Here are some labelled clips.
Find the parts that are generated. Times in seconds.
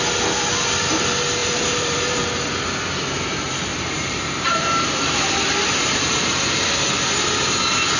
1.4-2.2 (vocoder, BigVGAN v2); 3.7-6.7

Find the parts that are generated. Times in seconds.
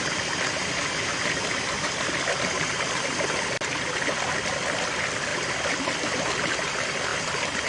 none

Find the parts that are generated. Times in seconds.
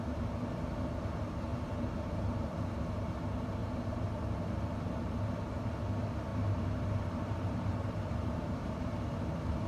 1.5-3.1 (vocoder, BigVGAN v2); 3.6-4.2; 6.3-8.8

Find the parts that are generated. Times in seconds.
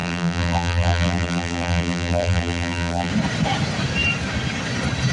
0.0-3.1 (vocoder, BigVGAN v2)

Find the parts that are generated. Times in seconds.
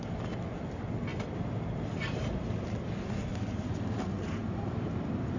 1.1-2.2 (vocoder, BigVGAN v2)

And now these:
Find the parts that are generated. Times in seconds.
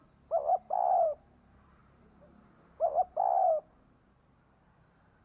0.5-1.2 (vocoder, BigVGAN v2); 1.8-2.9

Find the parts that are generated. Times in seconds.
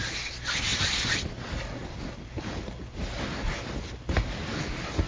none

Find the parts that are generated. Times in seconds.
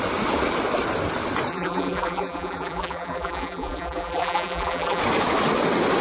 1.5-5.0 (vocoder, BigVGAN v2)